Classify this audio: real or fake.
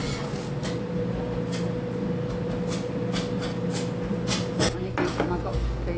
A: real